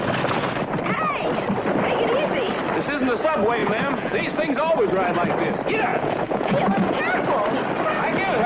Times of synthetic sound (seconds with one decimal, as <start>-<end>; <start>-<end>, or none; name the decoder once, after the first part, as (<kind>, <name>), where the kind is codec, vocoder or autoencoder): 3.6-4.4 (vocoder, Vocos); 5.9-7.0